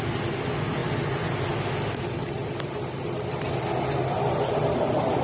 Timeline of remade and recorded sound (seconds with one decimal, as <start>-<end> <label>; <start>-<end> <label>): 0.0-5.2 recorded